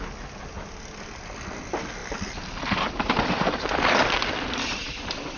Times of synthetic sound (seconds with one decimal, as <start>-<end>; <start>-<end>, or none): 2.0-5.4